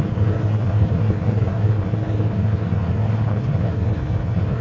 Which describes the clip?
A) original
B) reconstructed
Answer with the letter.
B